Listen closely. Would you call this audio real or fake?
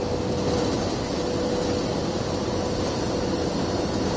real